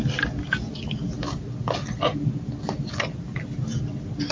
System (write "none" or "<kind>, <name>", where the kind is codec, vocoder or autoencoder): none